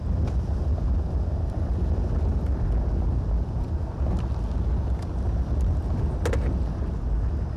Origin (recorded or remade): recorded